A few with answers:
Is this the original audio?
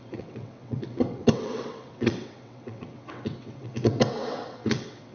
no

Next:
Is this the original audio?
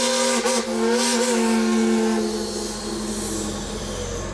yes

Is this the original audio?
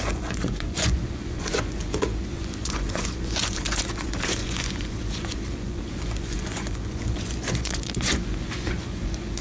no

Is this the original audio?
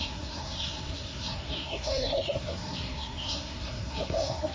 no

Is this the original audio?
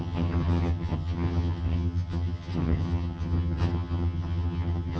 no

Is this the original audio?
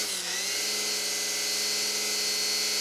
yes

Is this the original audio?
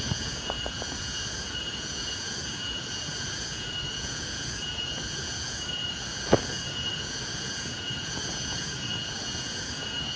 no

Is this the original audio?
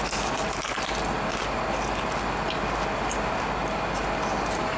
yes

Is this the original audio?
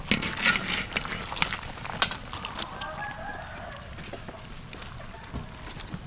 yes